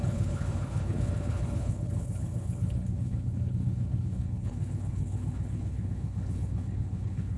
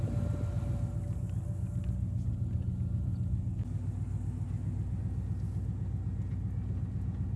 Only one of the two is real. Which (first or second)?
second